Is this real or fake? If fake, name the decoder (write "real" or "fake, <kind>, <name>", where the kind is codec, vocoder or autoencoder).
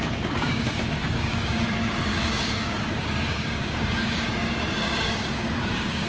fake, codec, DAC